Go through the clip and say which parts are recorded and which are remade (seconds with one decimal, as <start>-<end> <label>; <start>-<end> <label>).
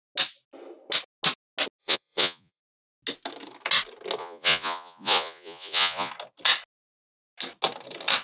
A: 0.0-1.8 recorded; 1.8-2.6 remade; 2.6-4.2 recorded; 4.2-6.1 remade; 6.1-8.2 recorded